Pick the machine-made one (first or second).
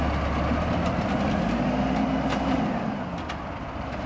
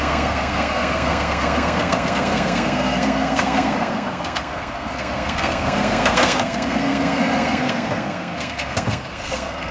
second